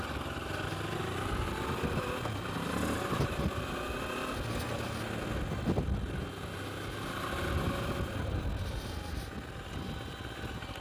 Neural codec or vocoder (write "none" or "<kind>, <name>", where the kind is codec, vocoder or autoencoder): none